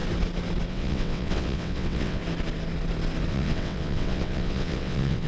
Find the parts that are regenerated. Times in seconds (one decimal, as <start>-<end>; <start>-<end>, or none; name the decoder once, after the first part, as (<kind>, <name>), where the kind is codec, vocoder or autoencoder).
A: 0.7-2.2 (vocoder, WaveNeXt); 3.3-5.3